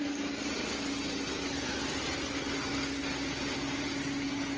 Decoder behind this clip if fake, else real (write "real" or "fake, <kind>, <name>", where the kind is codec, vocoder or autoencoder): real